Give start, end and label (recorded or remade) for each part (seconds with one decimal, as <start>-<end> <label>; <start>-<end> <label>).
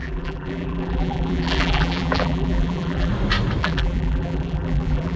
0.0-3.1 remade; 3.1-3.6 recorded; 3.6-5.2 remade